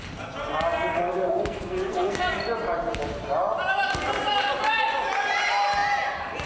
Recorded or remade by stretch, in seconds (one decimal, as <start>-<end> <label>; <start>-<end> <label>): 0.0-0.9 recorded; 0.9-2.3 remade; 2.3-6.5 recorded